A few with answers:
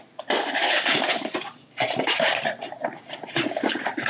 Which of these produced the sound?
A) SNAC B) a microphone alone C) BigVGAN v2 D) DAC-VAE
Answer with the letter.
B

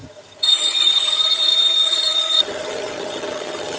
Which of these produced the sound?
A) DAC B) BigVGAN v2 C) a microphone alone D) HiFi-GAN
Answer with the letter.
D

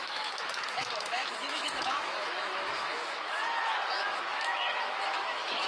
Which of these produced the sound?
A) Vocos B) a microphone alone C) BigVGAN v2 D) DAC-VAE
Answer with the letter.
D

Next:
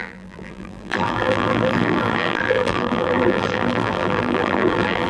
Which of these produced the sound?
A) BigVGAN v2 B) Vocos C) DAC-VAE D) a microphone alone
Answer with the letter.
A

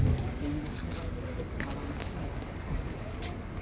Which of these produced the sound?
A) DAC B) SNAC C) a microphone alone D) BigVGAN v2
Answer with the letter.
A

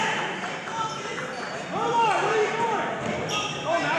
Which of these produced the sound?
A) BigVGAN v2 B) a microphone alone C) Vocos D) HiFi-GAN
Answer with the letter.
A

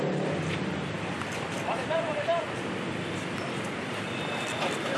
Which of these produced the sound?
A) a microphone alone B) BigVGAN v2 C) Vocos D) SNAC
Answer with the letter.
B